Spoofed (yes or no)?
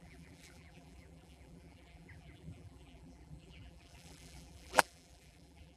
yes